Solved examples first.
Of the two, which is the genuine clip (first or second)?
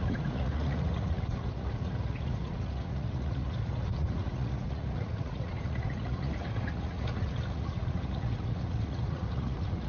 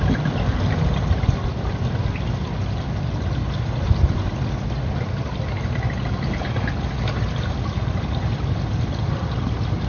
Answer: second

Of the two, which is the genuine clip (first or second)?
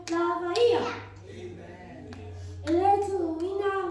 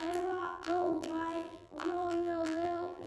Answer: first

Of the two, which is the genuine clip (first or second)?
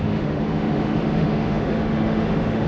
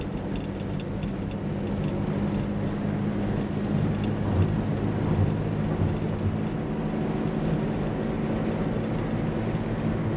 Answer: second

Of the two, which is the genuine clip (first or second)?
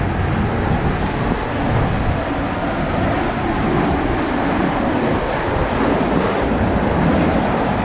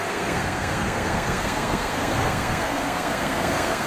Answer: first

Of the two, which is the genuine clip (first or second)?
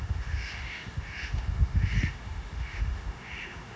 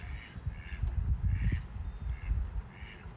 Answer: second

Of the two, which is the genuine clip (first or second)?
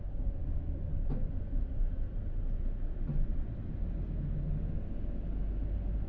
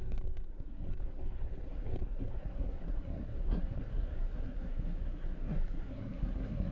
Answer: first